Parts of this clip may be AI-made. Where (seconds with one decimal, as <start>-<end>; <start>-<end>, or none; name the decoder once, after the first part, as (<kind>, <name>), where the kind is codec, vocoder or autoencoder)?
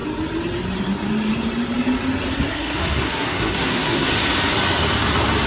2.5-4.1 (codec, SNAC)